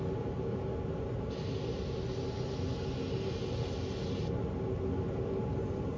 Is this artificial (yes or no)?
no